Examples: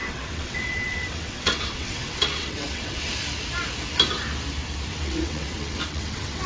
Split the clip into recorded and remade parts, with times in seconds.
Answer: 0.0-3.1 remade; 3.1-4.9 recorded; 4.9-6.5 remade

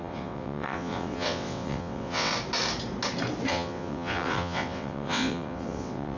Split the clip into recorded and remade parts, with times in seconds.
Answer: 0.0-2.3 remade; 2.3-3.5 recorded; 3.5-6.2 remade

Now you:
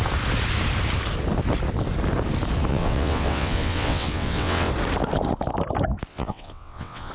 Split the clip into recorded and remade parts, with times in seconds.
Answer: 0.0-2.7 recorded; 2.7-4.7 remade; 4.7-6.1 recorded; 6.1-7.1 remade

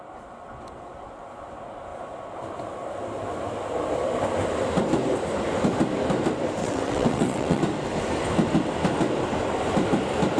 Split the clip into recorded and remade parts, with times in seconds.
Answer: 0.0-6.6 recorded; 6.6-7.6 remade; 7.6-10.4 recorded

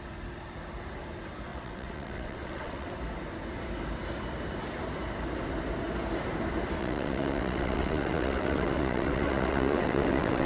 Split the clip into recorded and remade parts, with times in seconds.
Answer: 0.0-1.5 recorded; 1.5-2.9 remade; 2.9-6.8 recorded; 6.8-10.5 remade

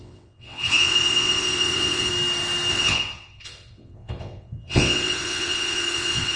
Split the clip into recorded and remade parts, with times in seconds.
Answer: 0.0-2.1 remade; 2.1-2.7 recorded; 2.7-6.4 remade